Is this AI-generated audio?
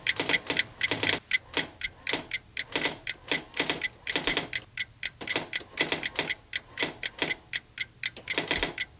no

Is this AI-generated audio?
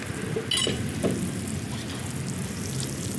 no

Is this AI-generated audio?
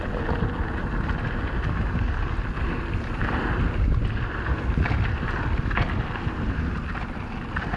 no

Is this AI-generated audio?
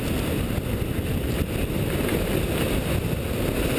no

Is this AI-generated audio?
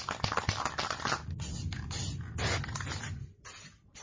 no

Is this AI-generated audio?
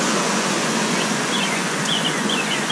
yes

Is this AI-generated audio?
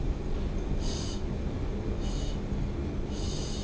no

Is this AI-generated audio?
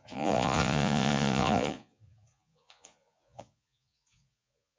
yes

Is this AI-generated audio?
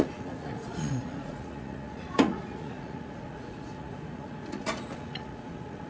yes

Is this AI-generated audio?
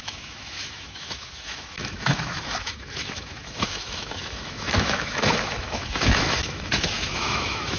yes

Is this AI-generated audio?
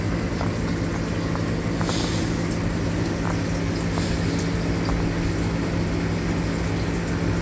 no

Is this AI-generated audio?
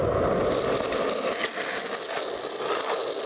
no